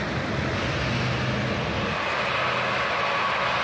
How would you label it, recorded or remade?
recorded